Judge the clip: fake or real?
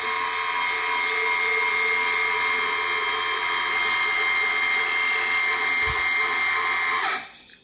real